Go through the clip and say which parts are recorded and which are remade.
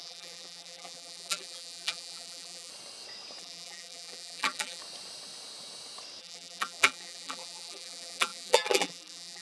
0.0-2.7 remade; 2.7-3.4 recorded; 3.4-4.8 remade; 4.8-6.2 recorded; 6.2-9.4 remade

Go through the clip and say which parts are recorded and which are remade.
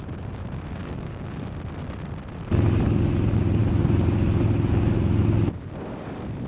0.0-0.8 recorded; 0.8-1.4 remade; 1.4-6.5 recorded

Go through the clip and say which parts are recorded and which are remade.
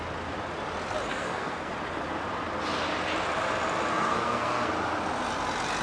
0.0-1.1 recorded; 1.1-1.7 remade; 1.7-3.9 recorded; 3.9-4.7 remade; 4.7-5.8 recorded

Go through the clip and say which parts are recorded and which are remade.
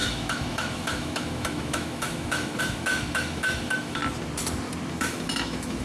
0.0-4.0 remade; 4.0-4.9 recorded; 4.9-5.8 remade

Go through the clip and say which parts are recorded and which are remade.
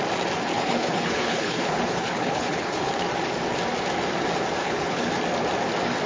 0.0-0.5 recorded; 0.5-2.9 remade; 2.9-4.6 recorded; 4.6-5.1 remade; 5.1-6.1 recorded